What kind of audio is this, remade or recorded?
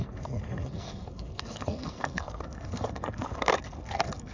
remade